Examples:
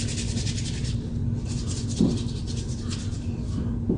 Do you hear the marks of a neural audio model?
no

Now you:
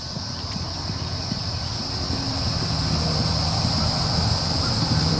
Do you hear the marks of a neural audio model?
yes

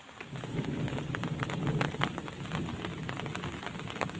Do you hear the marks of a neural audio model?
no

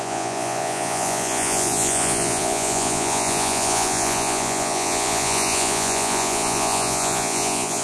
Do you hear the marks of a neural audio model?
yes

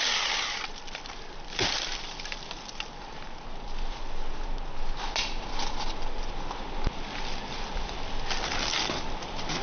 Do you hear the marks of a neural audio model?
no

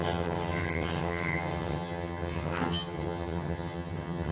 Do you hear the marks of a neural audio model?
yes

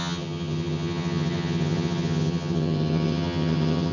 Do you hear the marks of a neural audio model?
yes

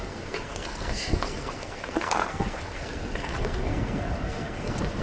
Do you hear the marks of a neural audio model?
yes